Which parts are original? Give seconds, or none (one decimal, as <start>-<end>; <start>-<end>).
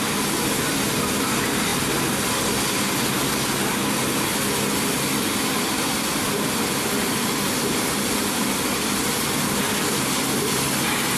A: 0.0-11.2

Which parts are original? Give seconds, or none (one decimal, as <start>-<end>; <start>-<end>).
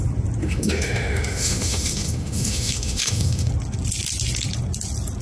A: 0.0-0.4; 3.5-5.2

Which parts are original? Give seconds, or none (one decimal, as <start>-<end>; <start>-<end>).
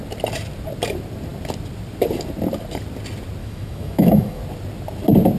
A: 0.0-3.4; 4.4-5.4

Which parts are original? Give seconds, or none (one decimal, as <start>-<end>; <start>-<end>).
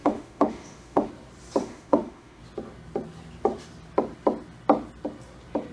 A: 1.1-1.6; 2.4-5.7